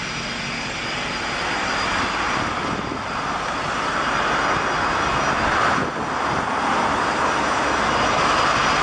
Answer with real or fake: real